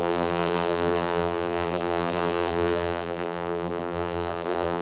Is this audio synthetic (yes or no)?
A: yes